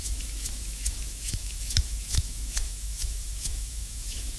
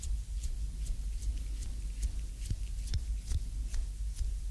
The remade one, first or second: first